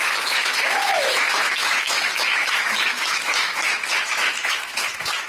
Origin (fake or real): fake